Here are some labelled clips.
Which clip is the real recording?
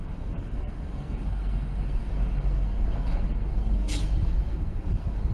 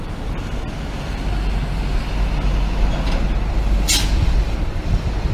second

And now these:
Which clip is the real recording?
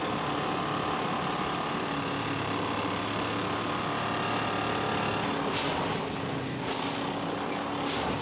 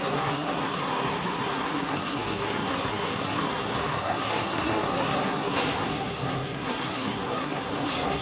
first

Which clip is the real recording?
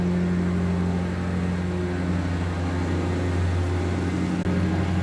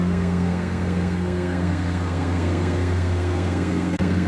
first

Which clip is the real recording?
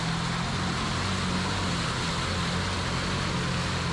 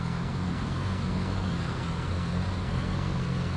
first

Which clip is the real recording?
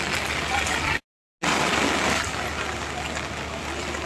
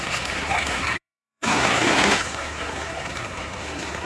first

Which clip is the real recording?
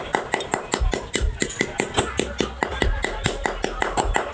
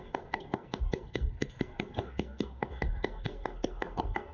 first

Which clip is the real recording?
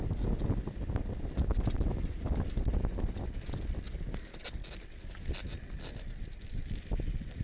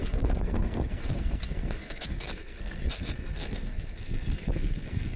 first